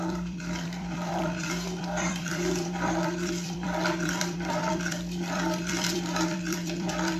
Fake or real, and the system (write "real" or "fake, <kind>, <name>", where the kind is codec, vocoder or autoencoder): fake, vocoder, BigVGAN v2